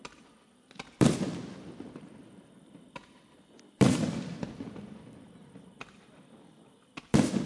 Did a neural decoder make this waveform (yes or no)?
yes